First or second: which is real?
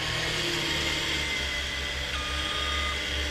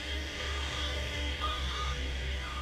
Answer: first